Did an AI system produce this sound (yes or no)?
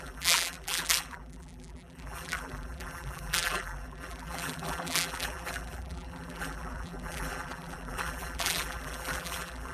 yes